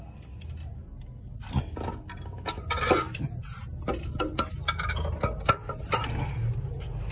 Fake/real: real